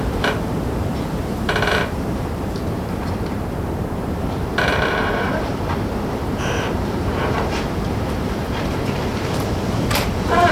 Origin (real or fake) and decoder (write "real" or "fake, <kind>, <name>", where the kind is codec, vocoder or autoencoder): fake, vocoder, BigVGAN v2